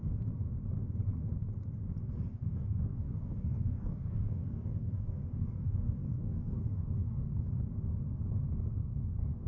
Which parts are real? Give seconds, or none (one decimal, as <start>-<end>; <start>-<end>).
0.0-2.3; 7.5-8.8